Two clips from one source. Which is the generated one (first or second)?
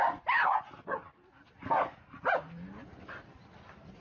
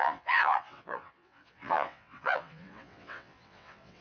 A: second